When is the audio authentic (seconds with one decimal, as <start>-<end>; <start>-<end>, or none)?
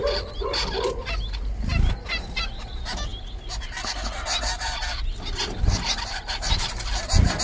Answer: 0.7-7.4